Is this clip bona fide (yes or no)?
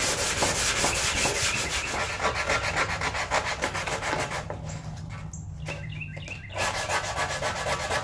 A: yes